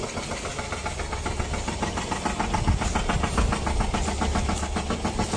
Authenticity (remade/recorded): recorded